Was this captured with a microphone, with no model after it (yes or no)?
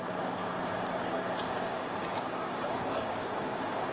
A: no